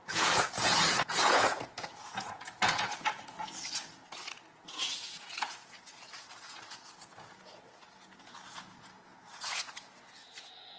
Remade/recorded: remade